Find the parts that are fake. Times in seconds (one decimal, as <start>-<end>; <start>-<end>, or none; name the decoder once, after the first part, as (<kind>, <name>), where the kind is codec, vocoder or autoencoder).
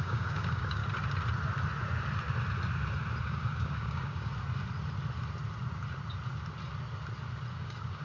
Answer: 0.0-0.8 (codec, DAC); 3.2-4.3; 7.5-8.0